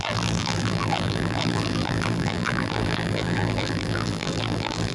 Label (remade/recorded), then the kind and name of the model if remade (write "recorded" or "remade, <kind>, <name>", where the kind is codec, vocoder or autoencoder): remade, vocoder, BigVGAN v2